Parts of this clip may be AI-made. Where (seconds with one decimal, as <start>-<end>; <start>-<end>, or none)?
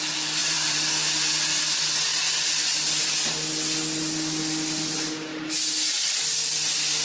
0.4-0.9